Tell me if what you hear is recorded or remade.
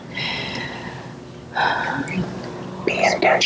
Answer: recorded